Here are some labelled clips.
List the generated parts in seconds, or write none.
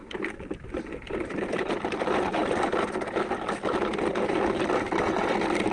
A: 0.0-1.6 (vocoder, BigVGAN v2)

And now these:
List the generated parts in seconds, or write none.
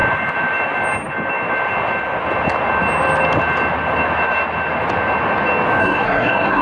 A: 5.8-6.6 (codec, SNAC)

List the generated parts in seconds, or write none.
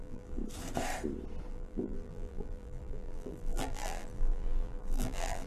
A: 0.0-0.4 (vocoder, BigVGAN v2); 1.5-5.5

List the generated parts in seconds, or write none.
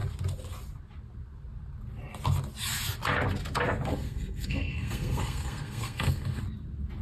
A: 3.9-6.4 (codec, SNAC)